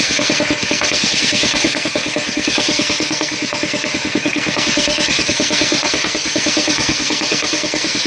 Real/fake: fake